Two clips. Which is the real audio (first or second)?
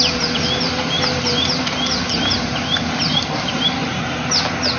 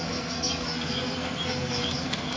first